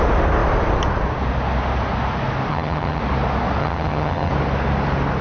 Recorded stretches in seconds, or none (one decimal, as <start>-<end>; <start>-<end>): 0.0-2.5; 3.0-3.6; 4.3-5.2